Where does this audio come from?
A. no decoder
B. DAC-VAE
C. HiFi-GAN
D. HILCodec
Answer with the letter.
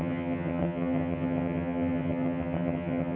C